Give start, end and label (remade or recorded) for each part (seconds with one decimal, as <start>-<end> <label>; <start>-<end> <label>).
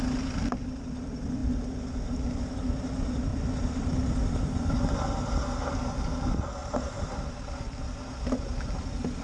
0.0-3.3 recorded; 3.3-5.2 remade; 5.2-6.6 recorded; 6.6-8.6 remade; 8.6-9.2 recorded